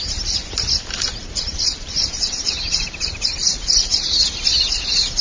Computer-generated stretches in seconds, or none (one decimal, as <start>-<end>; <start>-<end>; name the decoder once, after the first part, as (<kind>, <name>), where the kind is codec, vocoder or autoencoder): 1.2-3.0 (vocoder, BigVGAN v2)